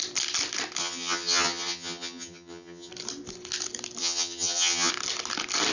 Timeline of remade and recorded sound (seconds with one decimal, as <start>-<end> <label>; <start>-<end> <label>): 0.0-0.8 recorded; 0.8-2.9 remade; 2.9-4.0 recorded; 4.0-4.9 remade; 4.9-5.7 recorded